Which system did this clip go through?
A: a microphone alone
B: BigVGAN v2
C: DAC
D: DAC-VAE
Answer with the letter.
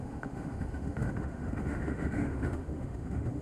D